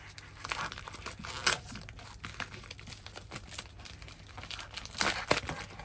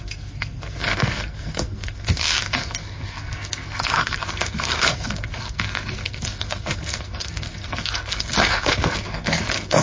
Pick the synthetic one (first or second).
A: second